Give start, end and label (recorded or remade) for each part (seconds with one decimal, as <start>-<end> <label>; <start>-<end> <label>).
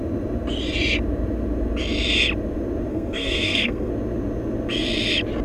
0.0-2.9 recorded; 2.9-3.9 remade; 3.9-5.4 recorded